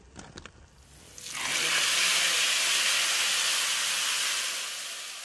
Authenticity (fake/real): real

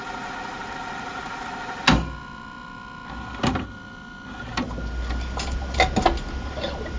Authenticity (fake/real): real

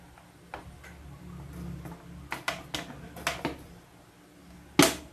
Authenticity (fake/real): real